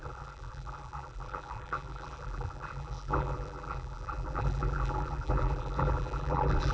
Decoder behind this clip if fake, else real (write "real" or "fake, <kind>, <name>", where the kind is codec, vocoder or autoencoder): fake, vocoder, BigVGAN v2